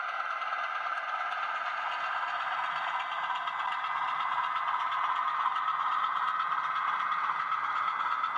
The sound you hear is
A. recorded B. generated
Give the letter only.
A